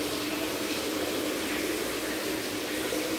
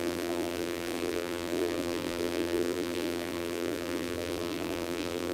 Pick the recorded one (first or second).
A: first